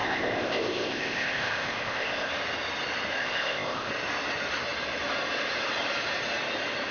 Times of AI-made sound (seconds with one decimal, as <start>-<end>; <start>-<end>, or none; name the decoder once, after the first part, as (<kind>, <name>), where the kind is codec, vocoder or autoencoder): 0.0-2.3 (codec, ZipCodec); 3.2-3.9